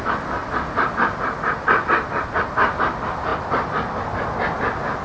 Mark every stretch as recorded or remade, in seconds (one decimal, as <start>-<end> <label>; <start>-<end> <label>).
0.0-5.0 recorded